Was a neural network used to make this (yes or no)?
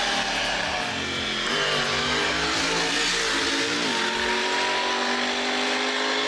no